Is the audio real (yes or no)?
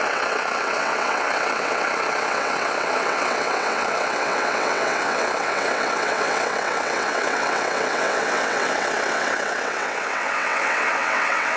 no